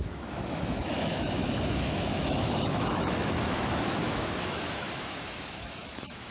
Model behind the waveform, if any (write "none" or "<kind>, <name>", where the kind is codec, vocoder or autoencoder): autoencoder, DAC-VAE